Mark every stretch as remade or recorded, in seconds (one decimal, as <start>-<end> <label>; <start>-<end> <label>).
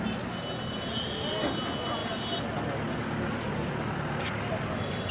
0.0-5.1 recorded